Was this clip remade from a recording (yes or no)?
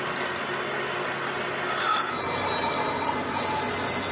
no